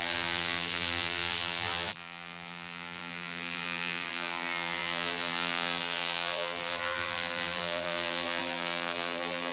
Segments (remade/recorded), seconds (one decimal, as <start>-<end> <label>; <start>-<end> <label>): 0.0-9.5 remade